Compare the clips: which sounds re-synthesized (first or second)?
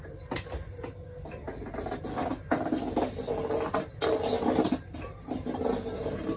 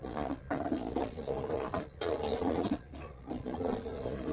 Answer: second